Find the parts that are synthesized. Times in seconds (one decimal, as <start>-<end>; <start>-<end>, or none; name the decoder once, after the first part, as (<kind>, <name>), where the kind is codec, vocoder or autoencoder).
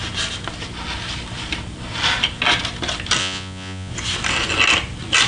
3.2-3.9 (vocoder, Vocos)